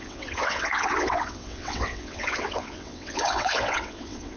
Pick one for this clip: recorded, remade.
remade